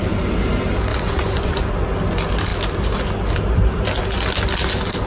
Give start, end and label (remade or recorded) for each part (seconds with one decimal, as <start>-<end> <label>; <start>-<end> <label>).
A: 0.0-0.9 recorded; 0.9-1.7 remade; 1.7-5.1 recorded